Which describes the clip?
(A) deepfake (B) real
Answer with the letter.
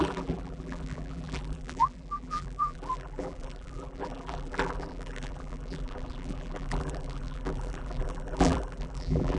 A